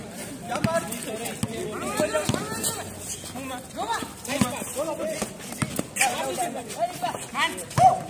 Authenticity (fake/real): real